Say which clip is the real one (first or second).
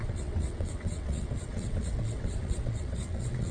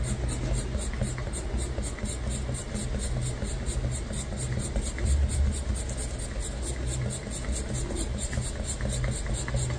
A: second